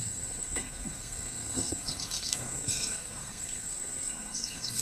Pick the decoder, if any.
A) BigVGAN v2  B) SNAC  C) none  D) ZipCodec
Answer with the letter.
B